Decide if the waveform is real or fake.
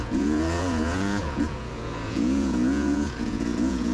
fake